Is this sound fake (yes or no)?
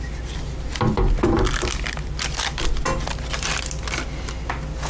no